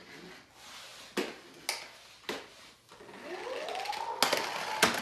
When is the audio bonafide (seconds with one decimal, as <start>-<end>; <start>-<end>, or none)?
0.0-5.0